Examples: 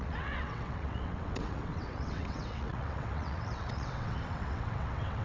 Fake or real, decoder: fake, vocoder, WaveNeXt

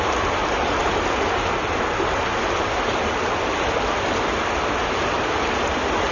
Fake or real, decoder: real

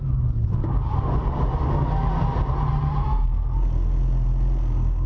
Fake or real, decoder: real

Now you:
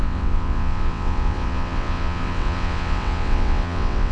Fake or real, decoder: fake, vocoder, WaveNeXt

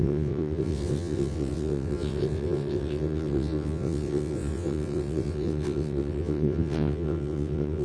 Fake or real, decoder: fake, vocoder, WaveNeXt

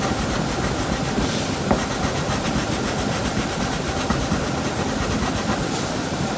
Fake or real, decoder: real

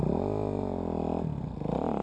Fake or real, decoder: real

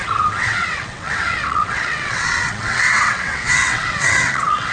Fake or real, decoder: fake, vocoder, WaveNeXt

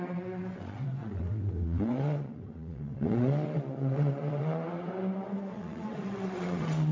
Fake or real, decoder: fake, vocoder, WaveNeXt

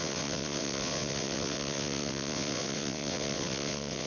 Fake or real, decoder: fake, vocoder, WaveNeXt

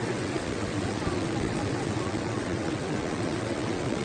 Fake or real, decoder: fake, vocoder, WaveNeXt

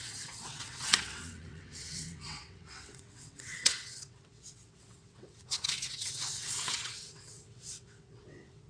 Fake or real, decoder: fake, vocoder, WaveNeXt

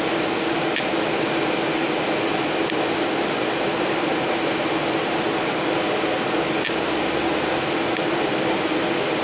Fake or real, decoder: real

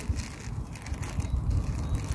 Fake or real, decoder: real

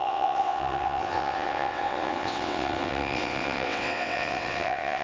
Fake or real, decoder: fake, vocoder, WaveNeXt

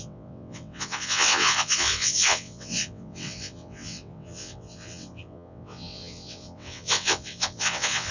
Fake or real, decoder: fake, vocoder, WaveNeXt